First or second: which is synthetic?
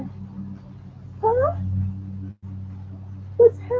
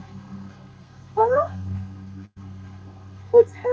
second